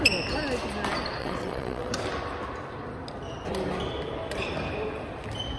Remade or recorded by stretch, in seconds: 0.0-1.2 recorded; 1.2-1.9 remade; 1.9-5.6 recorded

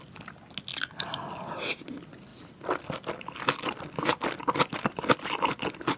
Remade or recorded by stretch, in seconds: 0.0-6.0 recorded

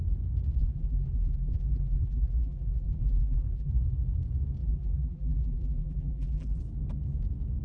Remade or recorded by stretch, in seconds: 0.0-0.6 recorded; 0.6-3.7 remade; 3.7-4.6 recorded; 4.6-6.6 remade; 6.6-7.6 recorded

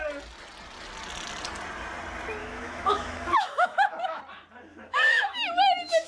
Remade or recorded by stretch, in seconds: 0.0-2.4 recorded; 2.4-4.2 remade; 4.2-4.7 recorded; 4.7-6.1 remade

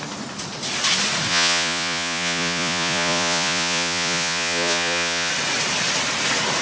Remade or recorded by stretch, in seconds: 0.0-1.3 recorded; 1.3-5.3 remade; 5.3-6.6 recorded

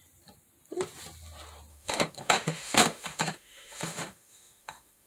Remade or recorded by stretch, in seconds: 0.0-1.7 recorded; 1.7-5.1 remade